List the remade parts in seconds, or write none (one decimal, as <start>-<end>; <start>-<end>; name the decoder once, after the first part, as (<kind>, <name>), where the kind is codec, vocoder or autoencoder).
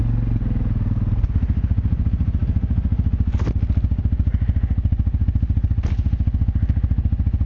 none